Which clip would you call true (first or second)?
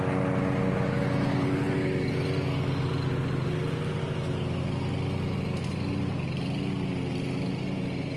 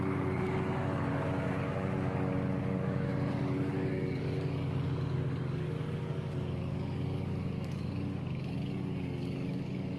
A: first